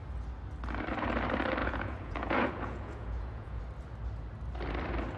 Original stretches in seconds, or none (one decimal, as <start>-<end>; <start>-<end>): 0.0-1.6; 3.6-5.2